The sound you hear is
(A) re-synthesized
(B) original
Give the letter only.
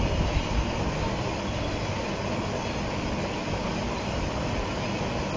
B